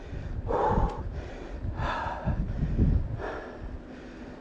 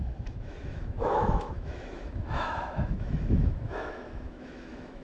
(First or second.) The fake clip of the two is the second